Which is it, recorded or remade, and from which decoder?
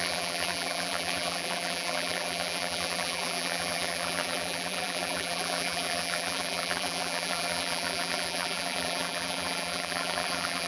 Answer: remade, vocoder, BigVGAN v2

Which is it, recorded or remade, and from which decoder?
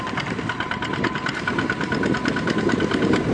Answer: remade, vocoder, BigVGAN v2